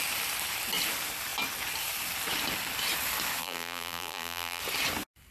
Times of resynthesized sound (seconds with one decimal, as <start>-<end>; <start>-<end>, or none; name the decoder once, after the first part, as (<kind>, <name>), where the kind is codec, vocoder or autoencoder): 3.4-4.6 (vocoder, BigVGAN v2)